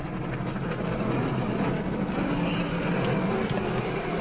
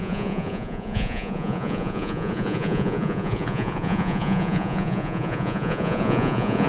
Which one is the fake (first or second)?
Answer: second